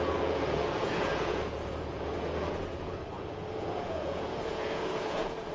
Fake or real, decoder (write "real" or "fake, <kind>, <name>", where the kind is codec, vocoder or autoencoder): fake, vocoder, Vocos